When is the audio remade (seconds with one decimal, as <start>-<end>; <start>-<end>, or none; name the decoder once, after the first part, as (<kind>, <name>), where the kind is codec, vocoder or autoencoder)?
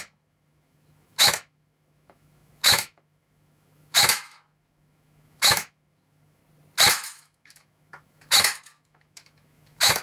0.0-6.4 (autoencoder, DAC-VAE); 6.9-10.0